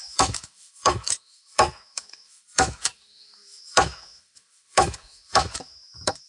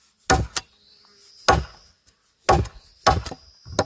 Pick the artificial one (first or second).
first